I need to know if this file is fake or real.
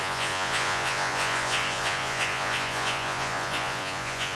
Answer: fake